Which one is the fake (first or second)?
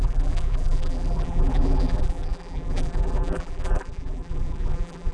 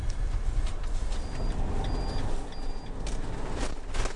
first